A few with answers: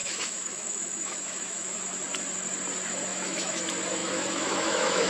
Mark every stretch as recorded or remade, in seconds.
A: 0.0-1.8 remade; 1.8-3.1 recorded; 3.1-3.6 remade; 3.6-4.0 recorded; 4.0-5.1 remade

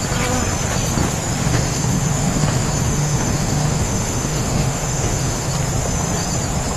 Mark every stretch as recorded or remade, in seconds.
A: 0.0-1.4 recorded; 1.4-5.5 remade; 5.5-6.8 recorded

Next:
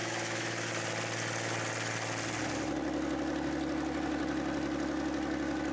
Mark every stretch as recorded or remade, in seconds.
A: 0.0-0.7 remade; 0.7-5.7 recorded